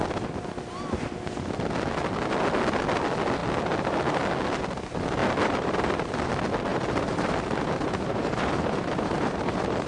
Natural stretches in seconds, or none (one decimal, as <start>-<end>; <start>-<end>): 0.0-5.2; 6.3-6.7